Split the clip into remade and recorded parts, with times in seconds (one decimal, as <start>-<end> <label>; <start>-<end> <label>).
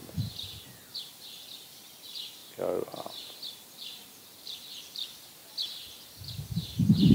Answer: 0.0-2.4 remade; 2.4-3.5 recorded; 3.5-5.4 remade; 5.4-6.2 recorded; 6.2-7.1 remade